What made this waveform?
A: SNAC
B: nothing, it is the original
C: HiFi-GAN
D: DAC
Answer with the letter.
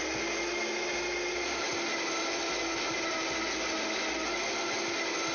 B